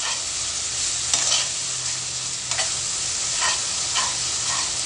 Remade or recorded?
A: recorded